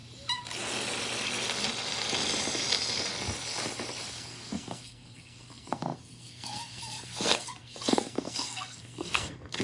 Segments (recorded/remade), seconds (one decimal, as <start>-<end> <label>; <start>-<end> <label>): 0.0-4.1 recorded; 4.1-9.6 remade